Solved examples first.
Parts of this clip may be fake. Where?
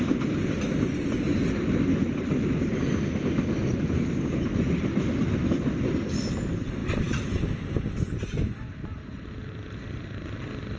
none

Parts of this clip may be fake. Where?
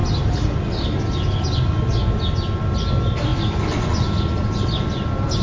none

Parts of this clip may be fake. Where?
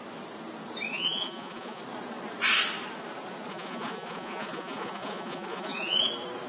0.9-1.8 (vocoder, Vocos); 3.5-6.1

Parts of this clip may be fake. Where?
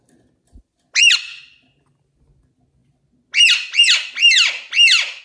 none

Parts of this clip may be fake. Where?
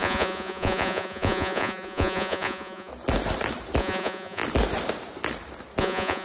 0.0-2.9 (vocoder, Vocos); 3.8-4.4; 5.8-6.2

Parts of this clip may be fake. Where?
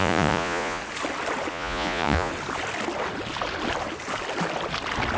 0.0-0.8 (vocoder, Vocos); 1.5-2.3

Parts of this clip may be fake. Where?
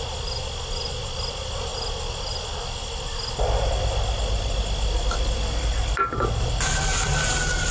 none